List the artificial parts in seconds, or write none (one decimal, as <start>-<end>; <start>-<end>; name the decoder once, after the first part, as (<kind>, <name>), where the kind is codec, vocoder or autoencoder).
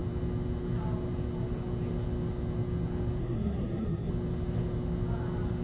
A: 3.2-4.1 (codec, SNAC)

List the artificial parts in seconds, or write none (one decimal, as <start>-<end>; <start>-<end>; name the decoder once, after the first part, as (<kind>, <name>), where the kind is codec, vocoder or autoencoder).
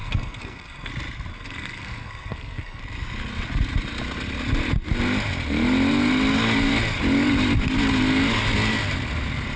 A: 0.0-0.9 (codec, SNAC); 1.3-2.8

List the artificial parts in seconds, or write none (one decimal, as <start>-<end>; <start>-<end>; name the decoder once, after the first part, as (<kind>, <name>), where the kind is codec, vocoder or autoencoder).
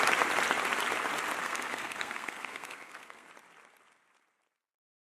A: 1.4-3.3 (codec, SNAC)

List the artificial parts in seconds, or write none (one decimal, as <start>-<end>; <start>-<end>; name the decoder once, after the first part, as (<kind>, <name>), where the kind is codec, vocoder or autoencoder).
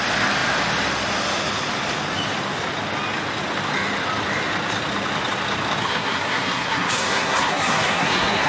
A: 5.8-8.5 (codec, SNAC)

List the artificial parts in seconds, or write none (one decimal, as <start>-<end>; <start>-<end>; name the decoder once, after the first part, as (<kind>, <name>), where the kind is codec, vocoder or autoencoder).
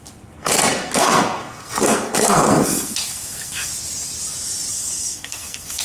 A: 0.0-3.7 (codec, SNAC); 4.7-5.8